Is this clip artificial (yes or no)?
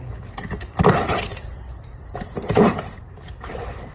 yes